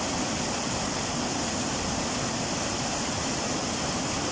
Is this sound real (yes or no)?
yes